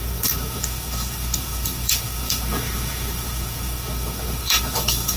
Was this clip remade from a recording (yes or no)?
yes